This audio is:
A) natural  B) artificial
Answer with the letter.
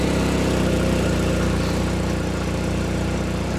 B